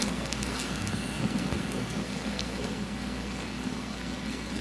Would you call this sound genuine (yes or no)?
no